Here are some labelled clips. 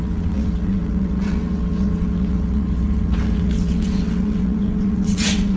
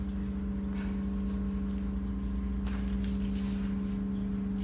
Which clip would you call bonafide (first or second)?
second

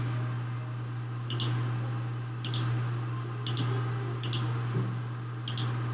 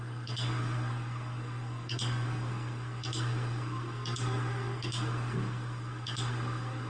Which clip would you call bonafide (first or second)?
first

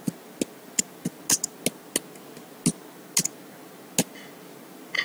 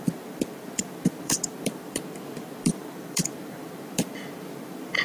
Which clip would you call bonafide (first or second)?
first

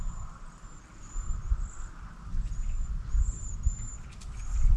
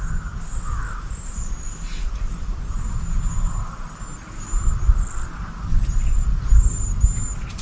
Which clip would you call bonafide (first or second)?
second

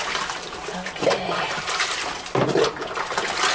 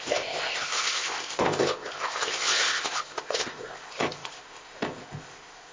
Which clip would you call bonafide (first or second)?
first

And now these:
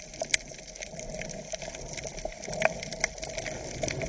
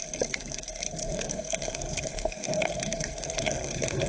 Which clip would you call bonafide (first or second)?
first